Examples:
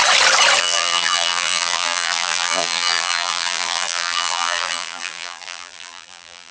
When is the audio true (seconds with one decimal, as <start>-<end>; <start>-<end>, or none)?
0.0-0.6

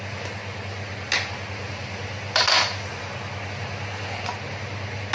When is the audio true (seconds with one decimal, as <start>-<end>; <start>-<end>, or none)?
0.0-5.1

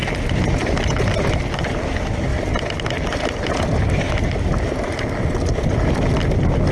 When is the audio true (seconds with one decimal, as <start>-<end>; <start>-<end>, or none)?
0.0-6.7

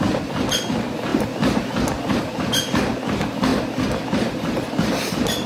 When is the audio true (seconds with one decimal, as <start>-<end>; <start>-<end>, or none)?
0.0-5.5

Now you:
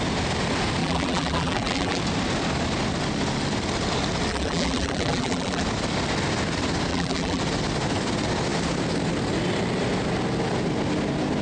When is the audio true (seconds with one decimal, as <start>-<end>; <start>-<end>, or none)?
0.0-0.8; 2.0-4.3; 5.6-6.9; 7.4-11.4

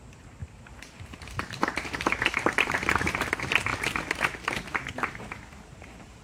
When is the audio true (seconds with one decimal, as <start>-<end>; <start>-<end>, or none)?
0.0-0.4; 3.3-6.2

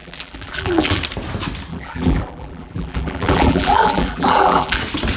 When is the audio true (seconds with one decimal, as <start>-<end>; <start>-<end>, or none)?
1.0-1.7; 4.8-5.2